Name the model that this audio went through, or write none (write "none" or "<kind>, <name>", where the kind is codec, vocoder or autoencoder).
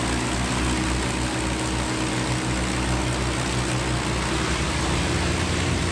none